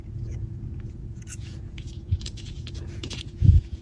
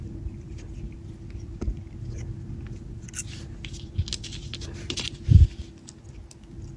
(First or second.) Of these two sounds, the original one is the second